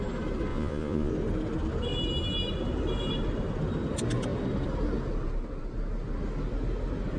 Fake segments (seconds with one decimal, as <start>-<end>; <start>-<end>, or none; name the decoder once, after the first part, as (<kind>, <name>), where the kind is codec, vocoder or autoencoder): 0.5-1.1 (vocoder, Vocos)